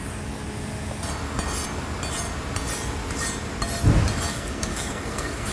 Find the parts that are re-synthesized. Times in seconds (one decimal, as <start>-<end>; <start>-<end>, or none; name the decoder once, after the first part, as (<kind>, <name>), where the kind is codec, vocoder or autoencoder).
4.3-5.5 (codec, SNAC)

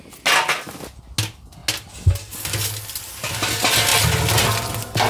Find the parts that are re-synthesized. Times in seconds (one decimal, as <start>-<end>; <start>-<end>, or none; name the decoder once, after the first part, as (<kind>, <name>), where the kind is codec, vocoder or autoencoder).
none

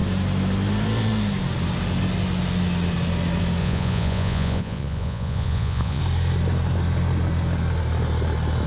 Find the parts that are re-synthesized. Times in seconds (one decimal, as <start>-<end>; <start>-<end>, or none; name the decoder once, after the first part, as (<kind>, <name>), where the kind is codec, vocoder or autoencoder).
3.6-6.0 (vocoder, Vocos)

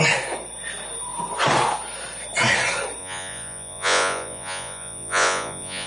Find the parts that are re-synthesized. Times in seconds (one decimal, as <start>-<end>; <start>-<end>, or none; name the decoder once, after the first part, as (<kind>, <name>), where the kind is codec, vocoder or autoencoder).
3.0-5.9 (vocoder, Vocos)

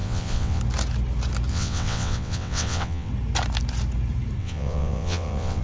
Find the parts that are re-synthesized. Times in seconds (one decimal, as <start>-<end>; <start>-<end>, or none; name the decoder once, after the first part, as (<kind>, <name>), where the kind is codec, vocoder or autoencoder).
0.0-0.6 (vocoder, WaveNeXt); 1.5-3.1; 4.4-5.6

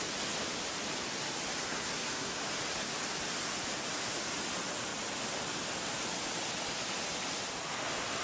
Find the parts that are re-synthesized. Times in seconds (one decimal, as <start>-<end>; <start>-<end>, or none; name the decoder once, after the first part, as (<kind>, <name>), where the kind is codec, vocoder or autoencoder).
1.6-2.4 (codec, SNAC)